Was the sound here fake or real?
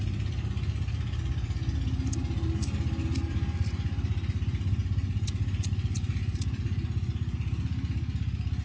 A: real